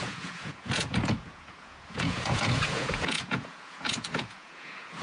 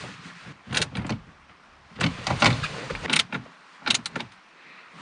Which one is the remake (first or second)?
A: first